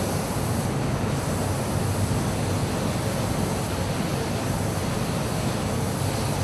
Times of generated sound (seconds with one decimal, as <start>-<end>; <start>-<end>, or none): none